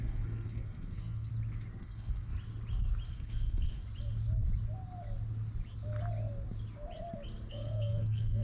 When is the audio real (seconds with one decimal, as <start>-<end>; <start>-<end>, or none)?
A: 1.3-1.8; 2.3-3.1; 3.8-7.5